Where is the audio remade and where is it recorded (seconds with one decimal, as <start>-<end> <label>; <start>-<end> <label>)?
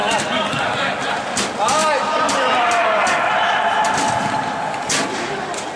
0.0-1.1 remade; 1.1-1.8 recorded; 1.8-4.1 remade; 4.1-5.8 recorded